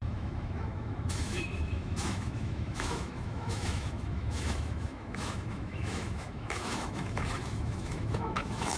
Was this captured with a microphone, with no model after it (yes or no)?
no